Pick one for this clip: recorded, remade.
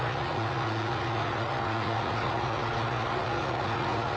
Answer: remade